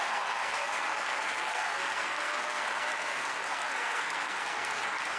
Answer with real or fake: fake